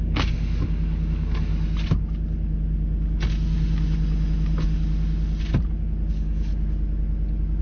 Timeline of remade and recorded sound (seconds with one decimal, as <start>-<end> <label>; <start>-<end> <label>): 0.0-1.5 remade; 1.5-6.1 recorded; 6.1-6.5 remade; 6.5-7.6 recorded